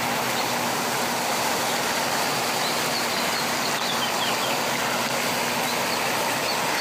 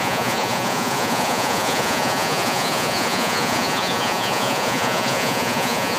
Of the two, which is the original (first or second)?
first